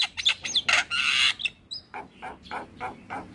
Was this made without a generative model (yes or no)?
yes